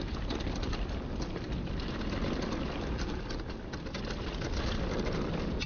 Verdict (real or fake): real